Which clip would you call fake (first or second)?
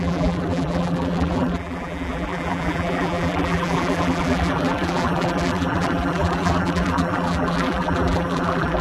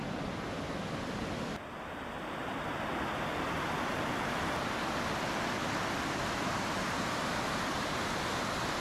first